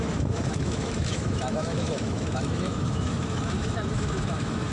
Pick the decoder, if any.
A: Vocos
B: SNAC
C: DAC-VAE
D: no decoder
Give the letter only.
C